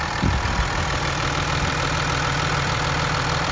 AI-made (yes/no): yes